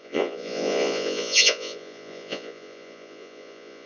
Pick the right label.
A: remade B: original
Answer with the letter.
A